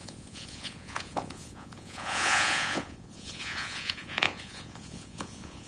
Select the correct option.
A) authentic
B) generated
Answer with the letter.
B